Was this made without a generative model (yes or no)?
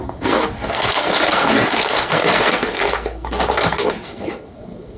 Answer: no